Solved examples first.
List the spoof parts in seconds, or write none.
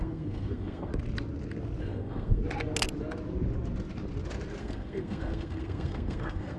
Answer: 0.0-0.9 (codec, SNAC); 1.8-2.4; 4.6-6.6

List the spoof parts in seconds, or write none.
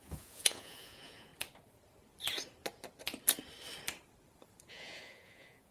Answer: 0.0-1.3 (vocoder, Vocos); 4.7-5.7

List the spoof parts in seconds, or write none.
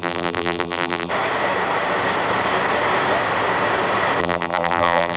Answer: 0.0-1.1 (vocoder, BigVGAN v2); 4.2-5.2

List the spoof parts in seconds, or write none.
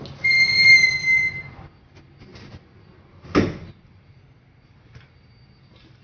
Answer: none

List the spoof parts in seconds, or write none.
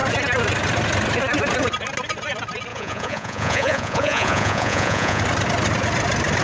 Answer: 2.7-5.2 (vocoder, Vocos)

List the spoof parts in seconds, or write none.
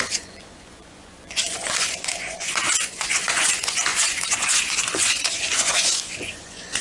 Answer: 0.0-6.8 (vocoder, Vocos)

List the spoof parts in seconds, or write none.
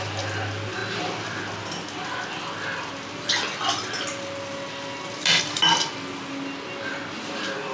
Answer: none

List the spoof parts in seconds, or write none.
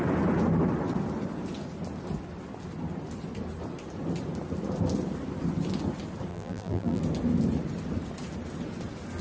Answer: 6.3-7.0 (vocoder, BigVGAN v2)